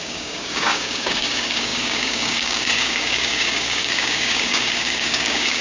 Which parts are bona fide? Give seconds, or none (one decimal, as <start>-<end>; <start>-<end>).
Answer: none